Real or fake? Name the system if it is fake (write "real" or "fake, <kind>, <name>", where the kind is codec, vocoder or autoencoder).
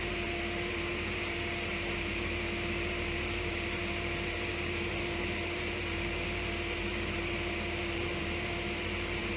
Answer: fake, vocoder, BigVGAN v2